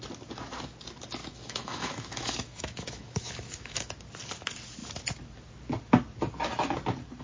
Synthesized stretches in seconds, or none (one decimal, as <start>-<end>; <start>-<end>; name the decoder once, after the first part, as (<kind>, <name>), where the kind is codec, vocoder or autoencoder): 1.2-3.9 (autoencoder, DAC-VAE)

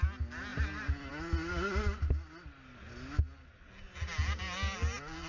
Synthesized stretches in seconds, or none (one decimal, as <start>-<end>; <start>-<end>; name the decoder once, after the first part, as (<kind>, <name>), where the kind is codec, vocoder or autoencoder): none